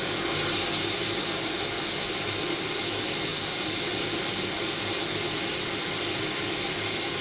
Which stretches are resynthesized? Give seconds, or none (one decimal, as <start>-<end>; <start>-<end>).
none